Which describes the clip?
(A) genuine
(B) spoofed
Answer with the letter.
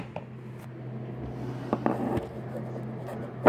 A